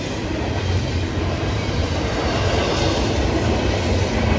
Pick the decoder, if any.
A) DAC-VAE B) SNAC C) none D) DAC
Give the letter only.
C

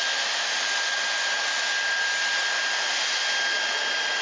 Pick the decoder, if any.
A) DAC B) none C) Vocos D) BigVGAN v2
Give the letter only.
B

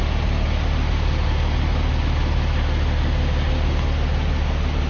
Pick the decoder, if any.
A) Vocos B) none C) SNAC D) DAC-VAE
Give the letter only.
B